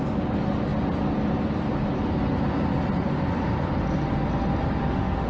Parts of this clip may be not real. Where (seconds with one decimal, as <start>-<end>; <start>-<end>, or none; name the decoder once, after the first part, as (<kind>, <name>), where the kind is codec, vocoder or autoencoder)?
4.8-5.3 (autoencoder, DAC-VAE)